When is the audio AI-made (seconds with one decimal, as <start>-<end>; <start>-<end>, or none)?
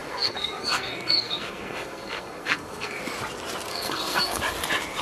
0.0-3.0; 3.7-4.4